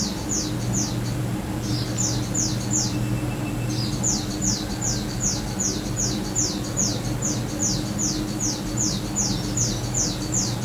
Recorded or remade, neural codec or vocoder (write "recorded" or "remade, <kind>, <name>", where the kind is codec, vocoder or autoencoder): recorded